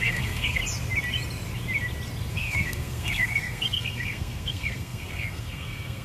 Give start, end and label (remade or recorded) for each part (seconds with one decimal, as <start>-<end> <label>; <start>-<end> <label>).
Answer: 0.0-0.6 remade; 0.6-2.3 recorded; 2.3-6.0 remade